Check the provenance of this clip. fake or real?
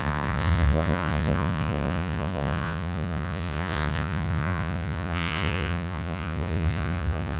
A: fake